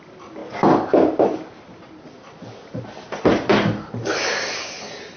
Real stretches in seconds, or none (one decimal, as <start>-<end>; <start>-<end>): 0.0-5.2